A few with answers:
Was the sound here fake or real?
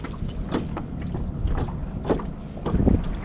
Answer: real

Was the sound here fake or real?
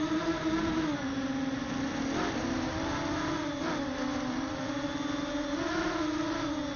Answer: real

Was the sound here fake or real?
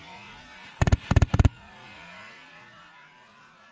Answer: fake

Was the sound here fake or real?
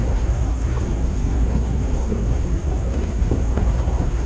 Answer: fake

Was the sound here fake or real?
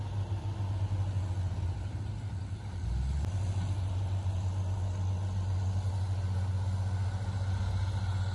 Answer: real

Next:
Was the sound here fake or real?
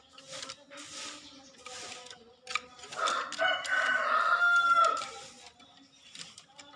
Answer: real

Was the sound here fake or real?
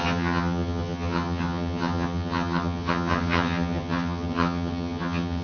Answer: fake